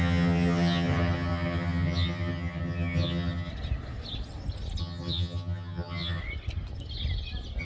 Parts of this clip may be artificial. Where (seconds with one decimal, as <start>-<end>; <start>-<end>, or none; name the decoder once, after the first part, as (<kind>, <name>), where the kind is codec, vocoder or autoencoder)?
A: 0.0-3.5 (vocoder, HiFi-GAN); 4.8-6.2